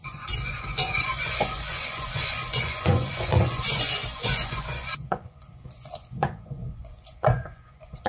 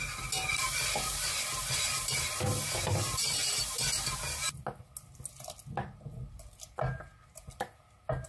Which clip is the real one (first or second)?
second